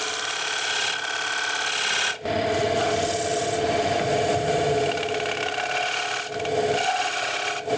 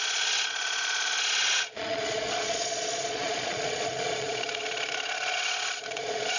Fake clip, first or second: second